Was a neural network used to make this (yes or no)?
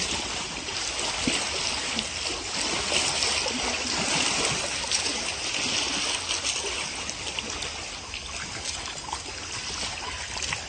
no